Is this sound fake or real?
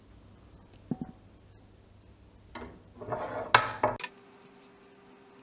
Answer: real